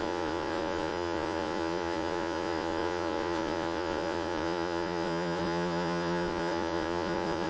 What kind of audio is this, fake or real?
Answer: fake